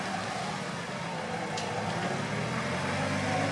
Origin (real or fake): real